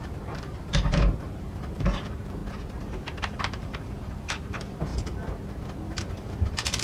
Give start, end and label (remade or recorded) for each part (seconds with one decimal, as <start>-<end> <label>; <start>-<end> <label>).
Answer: 0.0-2.4 remade; 2.4-3.2 recorded; 3.2-4.9 remade; 4.9-5.9 recorded; 5.9-6.8 remade